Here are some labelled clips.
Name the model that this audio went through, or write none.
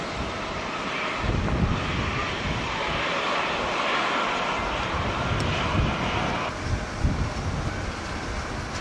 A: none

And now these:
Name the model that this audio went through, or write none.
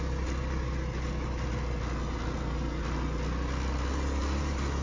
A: none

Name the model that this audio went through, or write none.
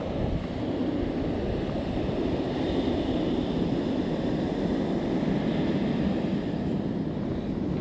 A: none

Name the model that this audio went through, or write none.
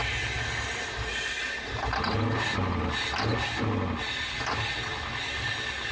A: none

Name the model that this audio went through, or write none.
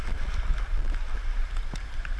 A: none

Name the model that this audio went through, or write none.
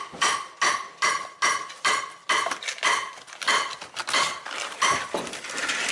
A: none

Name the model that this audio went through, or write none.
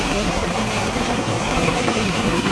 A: codec, SNAC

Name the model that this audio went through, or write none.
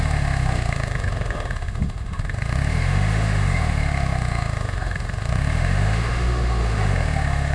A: autoencoder, DAC-VAE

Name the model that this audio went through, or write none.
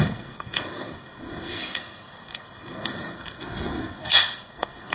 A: codec, SNAC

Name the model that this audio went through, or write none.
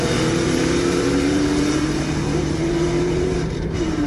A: vocoder, BigVGAN v2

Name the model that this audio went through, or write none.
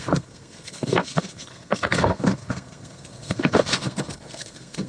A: codec, SNAC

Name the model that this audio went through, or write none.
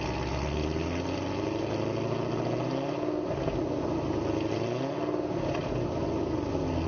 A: none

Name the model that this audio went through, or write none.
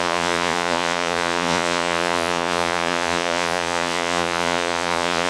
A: vocoder, Vocos